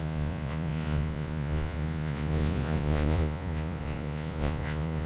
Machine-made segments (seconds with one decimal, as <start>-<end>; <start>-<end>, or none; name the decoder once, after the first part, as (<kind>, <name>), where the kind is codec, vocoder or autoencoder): 0.0-5.1 (vocoder, Vocos)